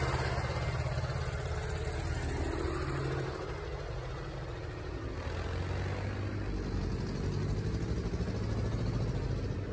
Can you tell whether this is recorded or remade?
recorded